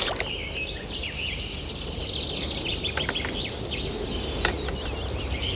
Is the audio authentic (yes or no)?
yes